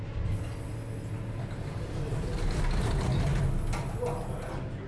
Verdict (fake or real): real